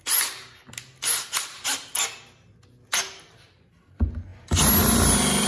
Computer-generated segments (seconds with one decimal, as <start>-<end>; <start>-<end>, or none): none

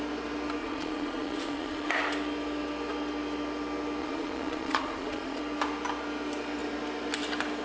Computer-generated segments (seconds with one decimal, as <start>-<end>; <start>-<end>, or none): 0.6-1.9; 4.0-5.4